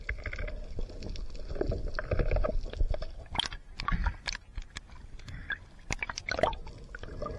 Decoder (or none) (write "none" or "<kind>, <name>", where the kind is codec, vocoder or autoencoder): none